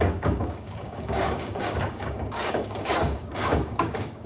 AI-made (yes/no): yes